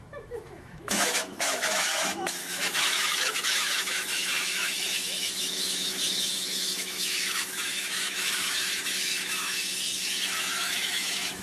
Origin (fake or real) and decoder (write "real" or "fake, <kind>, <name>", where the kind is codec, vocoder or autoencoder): fake, autoencoder, DAC-VAE